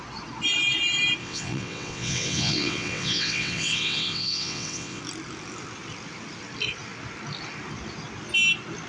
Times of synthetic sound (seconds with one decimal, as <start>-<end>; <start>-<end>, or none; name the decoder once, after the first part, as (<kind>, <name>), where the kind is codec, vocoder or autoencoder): 1.2-5.0 (vocoder, WaveNeXt)